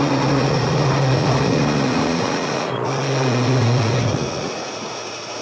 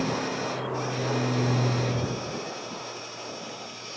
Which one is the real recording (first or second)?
second